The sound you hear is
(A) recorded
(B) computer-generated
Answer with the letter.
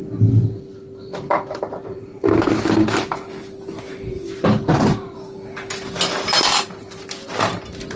A